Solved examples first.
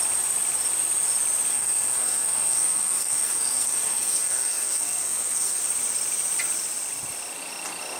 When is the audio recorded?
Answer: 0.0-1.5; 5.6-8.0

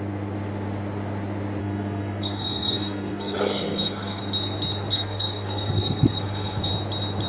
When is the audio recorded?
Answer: 0.0-1.6; 4.2-4.9; 6.7-7.3

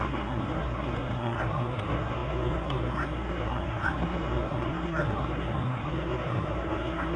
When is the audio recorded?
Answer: none

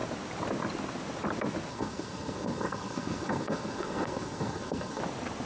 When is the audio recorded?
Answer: 0.0-1.7; 5.0-5.5